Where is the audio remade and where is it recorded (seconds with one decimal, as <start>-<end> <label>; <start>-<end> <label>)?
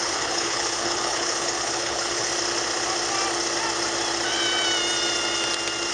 0.0-2.3 remade; 2.3-5.9 recorded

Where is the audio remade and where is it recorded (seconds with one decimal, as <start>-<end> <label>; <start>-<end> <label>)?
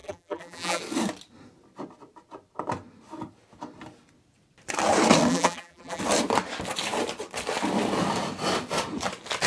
0.0-0.8 remade; 0.8-5.3 recorded; 5.3-6.0 remade; 6.0-9.5 recorded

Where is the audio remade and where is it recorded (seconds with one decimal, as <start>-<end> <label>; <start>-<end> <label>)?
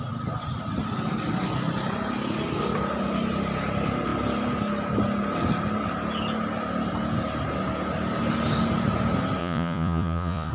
0.0-9.4 recorded; 9.4-10.5 remade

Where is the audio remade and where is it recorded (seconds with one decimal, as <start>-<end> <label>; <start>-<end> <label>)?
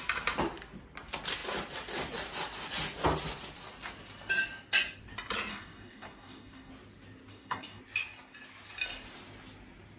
0.0-5.5 recorded; 5.5-6.7 remade; 6.7-7.3 recorded; 7.3-7.8 remade; 7.8-10.0 recorded